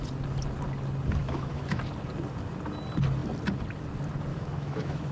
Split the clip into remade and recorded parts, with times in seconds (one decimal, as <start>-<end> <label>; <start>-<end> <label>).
0.0-1.2 recorded; 1.2-1.8 remade; 1.8-4.3 recorded; 4.3-5.1 remade